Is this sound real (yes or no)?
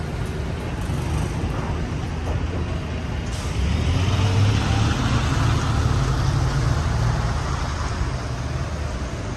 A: yes